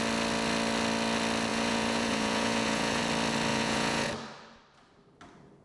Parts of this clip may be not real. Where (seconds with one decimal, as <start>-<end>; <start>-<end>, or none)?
1.5-3.0; 3.5-4.1

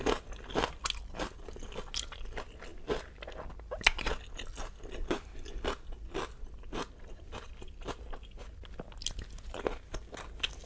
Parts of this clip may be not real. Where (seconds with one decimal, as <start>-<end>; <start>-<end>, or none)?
none

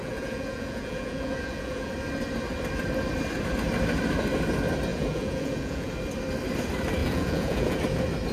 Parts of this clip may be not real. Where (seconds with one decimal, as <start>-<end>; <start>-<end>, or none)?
0.0-1.9; 4.9-5.9; 7.0-7.8

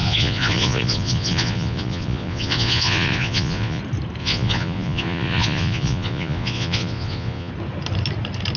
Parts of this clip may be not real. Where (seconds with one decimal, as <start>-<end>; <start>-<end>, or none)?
0.0-3.8; 4.2-7.5

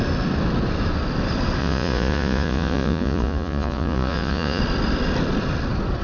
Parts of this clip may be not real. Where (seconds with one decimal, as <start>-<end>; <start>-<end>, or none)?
1.6-4.6

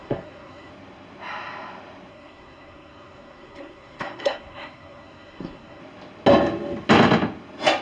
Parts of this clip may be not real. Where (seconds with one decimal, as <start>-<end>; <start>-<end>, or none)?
0.0-0.7; 2.1-5.8

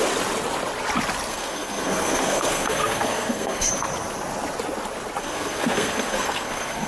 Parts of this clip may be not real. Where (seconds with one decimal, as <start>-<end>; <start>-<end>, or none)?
1.3-3.7; 5.2-6.9

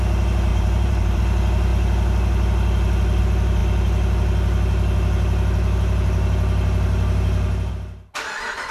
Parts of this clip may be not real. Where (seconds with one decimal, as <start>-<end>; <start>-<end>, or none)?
0.5-1.2